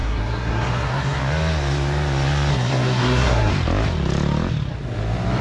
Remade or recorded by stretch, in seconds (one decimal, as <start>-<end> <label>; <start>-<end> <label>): 0.0-1.2 remade; 1.2-2.5 recorded; 2.5-3.5 remade; 3.5-5.4 recorded